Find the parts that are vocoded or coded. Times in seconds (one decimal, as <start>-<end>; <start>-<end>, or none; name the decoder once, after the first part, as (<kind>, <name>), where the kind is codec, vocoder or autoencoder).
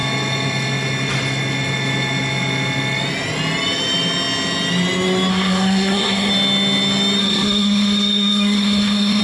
5.3-6.3 (codec, SNAC); 7.2-9.2